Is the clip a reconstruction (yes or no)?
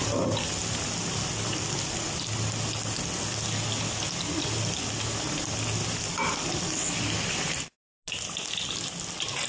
no